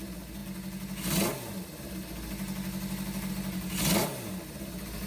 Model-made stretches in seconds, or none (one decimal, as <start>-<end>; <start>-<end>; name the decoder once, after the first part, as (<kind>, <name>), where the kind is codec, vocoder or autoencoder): none